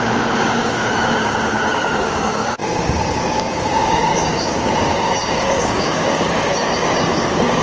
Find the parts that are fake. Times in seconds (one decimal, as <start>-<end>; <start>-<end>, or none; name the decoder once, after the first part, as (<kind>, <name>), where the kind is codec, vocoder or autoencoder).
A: 0.0-7.6 (codec, DAC)